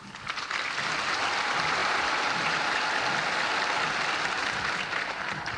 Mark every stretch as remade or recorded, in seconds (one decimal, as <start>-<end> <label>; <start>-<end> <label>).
0.0-1.8 recorded; 1.8-2.8 remade; 2.8-4.4 recorded; 4.4-5.6 remade